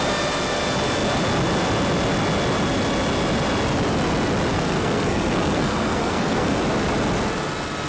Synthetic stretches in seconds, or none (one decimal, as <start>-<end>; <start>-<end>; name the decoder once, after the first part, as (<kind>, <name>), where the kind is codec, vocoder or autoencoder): 4.5-6.6 (codec, SNAC)